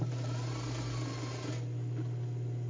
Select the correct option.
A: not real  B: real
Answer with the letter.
B